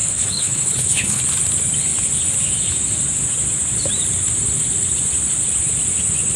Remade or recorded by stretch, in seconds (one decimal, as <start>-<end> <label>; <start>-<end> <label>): 0.0-1.2 remade; 1.2-6.4 recorded